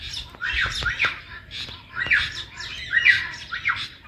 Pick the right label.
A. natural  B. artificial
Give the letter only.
A